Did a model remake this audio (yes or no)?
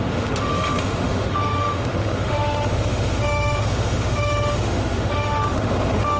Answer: yes